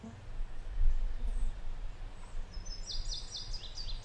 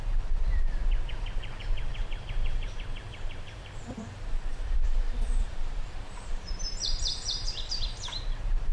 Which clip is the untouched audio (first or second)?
first